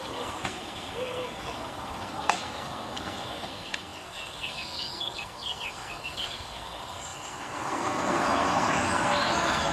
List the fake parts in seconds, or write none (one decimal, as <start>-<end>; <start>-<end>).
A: 0.0-9.7